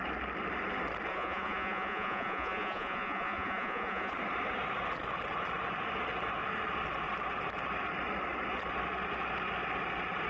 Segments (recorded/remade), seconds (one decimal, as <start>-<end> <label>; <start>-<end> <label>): 0.0-1.1 recorded; 1.1-4.1 remade; 4.1-10.3 recorded